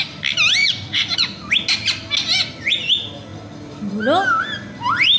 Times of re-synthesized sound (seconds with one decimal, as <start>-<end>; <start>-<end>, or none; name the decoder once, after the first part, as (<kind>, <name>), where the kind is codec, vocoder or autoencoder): 0.6-1.5 (vocoder, Vocos)